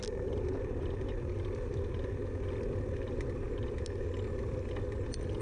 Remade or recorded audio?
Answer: recorded